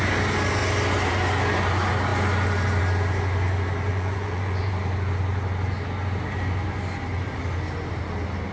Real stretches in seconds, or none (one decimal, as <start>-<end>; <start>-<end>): 0.0-3.9; 4.7-8.5